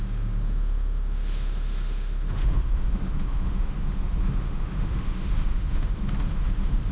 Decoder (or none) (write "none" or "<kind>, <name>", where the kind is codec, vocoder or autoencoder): autoencoder, DAC-VAE